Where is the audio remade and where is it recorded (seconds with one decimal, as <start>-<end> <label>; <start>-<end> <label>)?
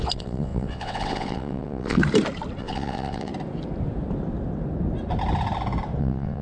0.0-2.0 remade; 2.0-2.6 recorded; 2.6-3.3 remade; 3.3-6.0 recorded; 6.0-6.4 remade